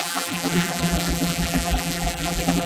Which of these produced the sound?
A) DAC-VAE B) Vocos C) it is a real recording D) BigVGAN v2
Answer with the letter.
D